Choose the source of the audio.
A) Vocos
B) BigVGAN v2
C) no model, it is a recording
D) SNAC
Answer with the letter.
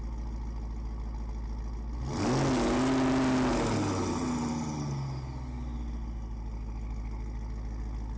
C